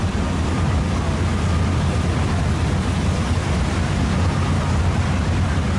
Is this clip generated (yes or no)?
no